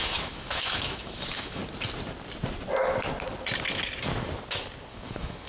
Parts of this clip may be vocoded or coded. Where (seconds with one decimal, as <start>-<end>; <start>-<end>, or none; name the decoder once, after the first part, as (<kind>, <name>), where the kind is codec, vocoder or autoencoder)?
0.0-1.6 (autoencoder, DAC-VAE); 4.9-5.5